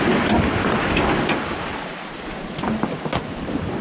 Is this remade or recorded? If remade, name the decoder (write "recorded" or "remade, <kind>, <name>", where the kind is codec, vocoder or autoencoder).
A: recorded